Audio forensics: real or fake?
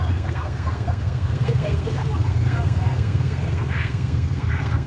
fake